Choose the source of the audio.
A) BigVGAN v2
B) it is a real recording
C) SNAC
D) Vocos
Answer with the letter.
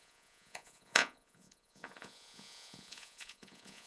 D